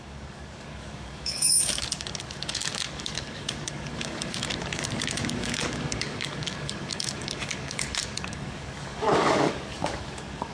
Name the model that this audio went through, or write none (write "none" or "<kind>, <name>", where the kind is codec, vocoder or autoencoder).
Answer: codec, DAC